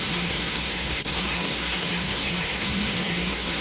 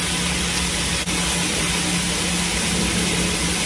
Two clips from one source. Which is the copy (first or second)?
first